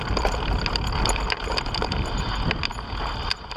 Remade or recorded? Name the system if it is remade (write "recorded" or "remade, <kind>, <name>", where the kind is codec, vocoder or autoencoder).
recorded